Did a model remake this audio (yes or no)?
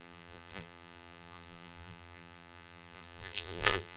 yes